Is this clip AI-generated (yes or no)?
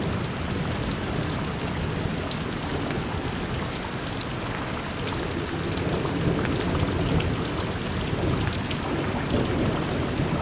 no